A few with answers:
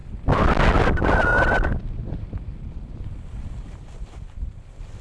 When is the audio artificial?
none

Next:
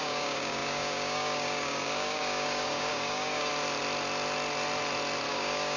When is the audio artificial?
0.0-3.5 (codec, DAC); 5.3-5.8

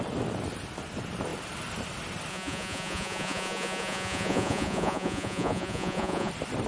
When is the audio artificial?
2.3-6.3 (vocoder, Vocos)

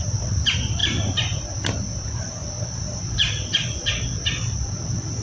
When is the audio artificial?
none

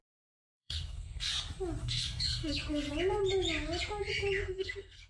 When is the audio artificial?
0.5-1.3 (codec, SNAC); 1.8-2.9; 4.4-5.1

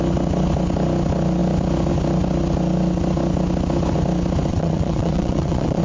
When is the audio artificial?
4.5-5.8 (vocoder, WaveNeXt)

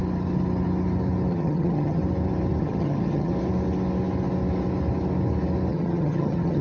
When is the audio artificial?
1.3-2.0 (vocoder, HiFi-GAN); 2.6-3.3; 5.7-6.6

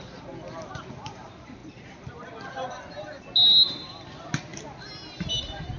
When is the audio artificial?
none